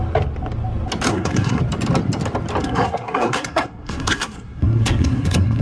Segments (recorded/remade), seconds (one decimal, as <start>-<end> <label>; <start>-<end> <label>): 0.0-1.1 recorded; 1.1-1.6 remade; 1.6-2.6 recorded; 2.6-5.6 remade